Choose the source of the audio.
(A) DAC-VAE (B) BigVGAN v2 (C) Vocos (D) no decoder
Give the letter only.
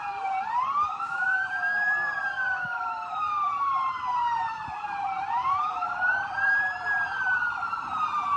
B